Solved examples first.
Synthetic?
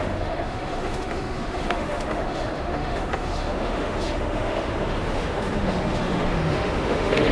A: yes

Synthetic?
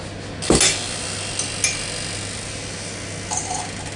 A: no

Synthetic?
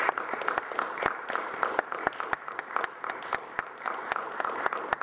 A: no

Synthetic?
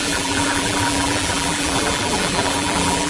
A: yes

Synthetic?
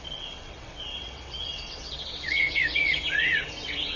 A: yes